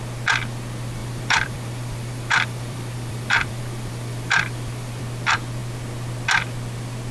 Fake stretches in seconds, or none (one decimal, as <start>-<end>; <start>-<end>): 1.0-5.0

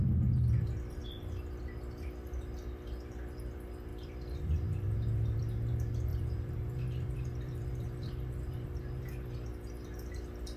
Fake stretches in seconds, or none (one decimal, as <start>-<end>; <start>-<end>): 1.0-1.6; 3.9-5.4; 6.1-8.8

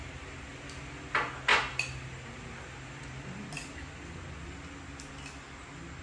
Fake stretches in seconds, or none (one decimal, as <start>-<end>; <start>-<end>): none

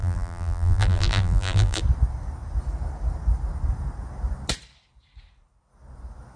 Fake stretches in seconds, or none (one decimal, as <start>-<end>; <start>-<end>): 0.0-1.8

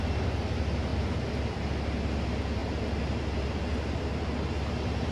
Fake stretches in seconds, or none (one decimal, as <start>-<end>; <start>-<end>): 0.9-1.6